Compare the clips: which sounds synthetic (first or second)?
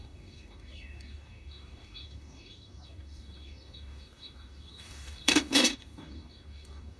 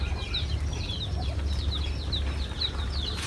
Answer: first